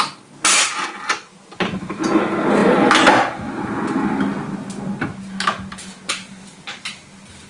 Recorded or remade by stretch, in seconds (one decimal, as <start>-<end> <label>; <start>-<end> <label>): 0.0-7.5 recorded